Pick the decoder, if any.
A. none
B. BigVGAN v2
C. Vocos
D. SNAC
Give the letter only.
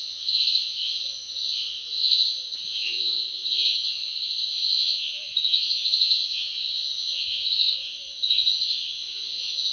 C